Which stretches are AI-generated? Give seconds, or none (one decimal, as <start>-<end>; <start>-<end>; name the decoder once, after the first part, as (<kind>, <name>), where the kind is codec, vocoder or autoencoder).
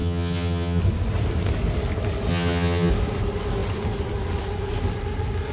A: 0.0-0.8 (vocoder, HiFi-GAN); 2.3-2.9